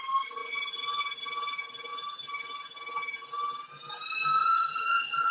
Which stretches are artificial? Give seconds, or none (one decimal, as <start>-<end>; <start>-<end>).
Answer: 4.4-5.3